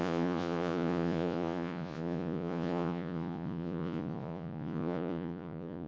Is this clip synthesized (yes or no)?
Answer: yes